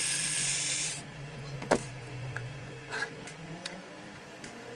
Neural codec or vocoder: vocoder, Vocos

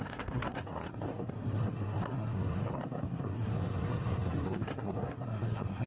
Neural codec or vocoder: codec, SNAC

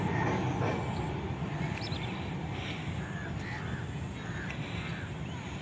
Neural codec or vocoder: none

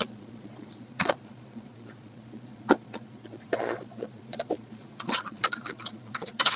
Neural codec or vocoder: vocoder, Vocos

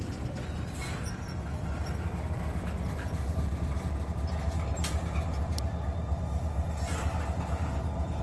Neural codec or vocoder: none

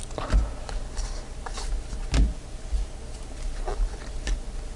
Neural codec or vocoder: none